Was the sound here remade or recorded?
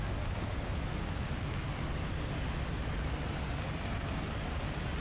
recorded